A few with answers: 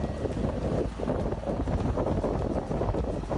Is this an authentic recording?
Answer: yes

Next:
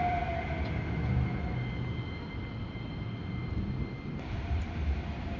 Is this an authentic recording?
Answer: yes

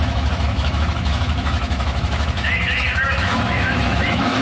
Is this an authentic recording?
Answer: no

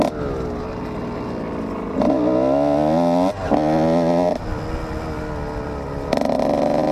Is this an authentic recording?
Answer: yes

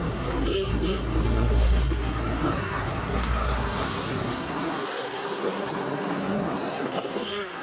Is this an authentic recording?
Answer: no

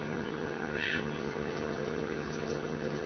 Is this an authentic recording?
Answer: no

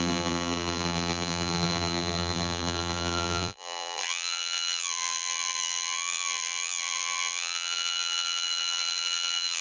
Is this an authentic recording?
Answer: no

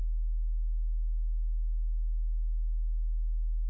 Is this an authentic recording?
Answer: yes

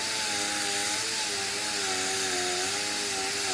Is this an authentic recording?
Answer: yes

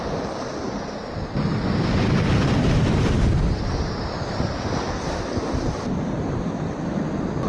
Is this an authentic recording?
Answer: yes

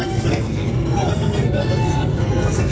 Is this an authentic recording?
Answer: no